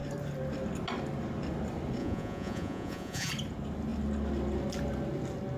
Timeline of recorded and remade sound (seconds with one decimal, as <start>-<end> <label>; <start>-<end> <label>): 0.0-2.0 recorded; 2.0-3.3 remade; 3.3-5.6 recorded